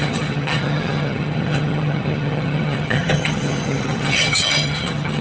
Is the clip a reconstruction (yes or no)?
yes